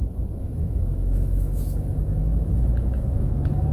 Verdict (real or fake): fake